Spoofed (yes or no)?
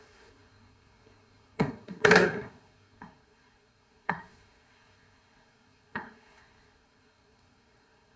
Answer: yes